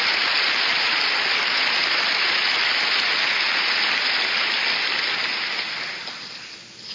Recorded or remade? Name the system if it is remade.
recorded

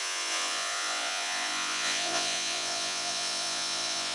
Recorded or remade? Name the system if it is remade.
remade, vocoder, Vocos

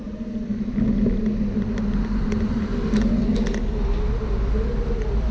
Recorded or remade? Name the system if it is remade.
recorded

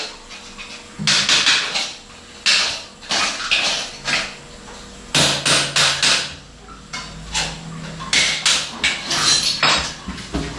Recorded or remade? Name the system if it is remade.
recorded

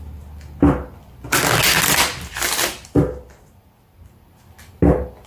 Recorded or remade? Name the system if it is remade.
recorded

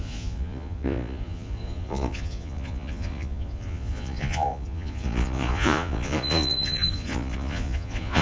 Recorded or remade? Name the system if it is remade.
remade, vocoder, Vocos